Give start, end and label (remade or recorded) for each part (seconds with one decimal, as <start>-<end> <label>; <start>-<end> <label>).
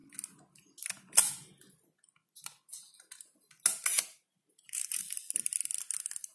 0.0-3.9 recorded; 3.9-5.0 remade; 5.0-6.3 recorded